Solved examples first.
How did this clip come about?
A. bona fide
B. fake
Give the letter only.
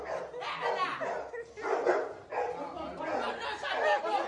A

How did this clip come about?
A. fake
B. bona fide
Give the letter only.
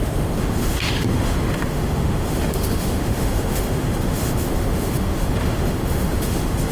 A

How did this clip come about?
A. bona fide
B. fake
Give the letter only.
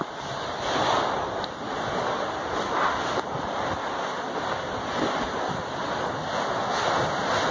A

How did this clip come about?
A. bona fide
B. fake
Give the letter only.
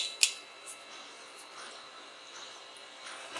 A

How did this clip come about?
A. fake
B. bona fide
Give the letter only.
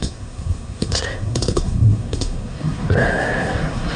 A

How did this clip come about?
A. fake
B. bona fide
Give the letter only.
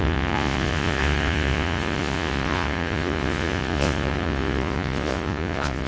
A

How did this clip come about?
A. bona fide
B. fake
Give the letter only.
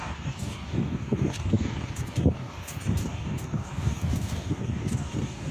B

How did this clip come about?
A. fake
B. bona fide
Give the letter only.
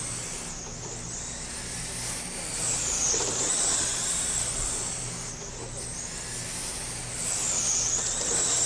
B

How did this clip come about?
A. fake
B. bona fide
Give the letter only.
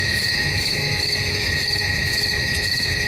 A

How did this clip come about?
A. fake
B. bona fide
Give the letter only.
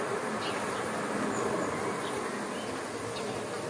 B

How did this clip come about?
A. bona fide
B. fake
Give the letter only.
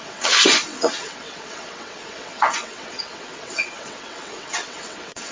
B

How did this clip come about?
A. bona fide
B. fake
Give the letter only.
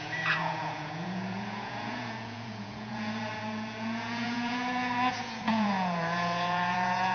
B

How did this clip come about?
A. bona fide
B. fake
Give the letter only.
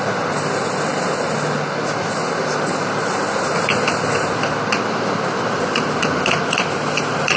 A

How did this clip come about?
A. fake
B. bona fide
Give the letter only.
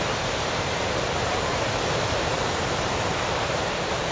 A